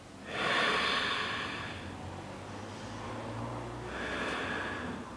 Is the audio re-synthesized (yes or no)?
no